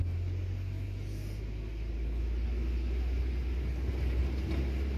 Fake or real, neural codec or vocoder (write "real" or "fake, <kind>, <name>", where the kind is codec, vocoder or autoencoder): real